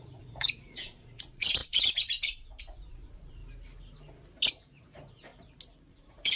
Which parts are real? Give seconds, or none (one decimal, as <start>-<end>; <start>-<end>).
3.4-4.5; 5.3-5.9